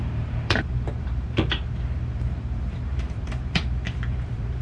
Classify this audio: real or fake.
fake